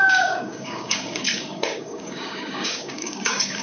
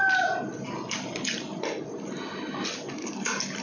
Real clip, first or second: second